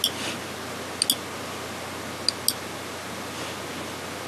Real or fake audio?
real